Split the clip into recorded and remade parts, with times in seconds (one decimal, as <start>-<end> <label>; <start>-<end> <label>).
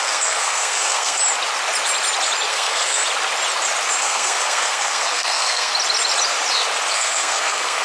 0.0-1.2 remade; 1.2-2.5 recorded; 2.5-3.0 remade; 3.0-4.0 recorded; 4.0-5.7 remade; 5.7-6.9 recorded; 6.9-7.8 remade